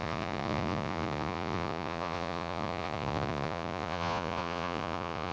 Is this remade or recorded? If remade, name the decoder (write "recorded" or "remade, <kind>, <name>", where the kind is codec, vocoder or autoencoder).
remade, vocoder, Vocos